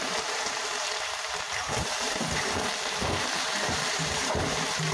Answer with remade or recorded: remade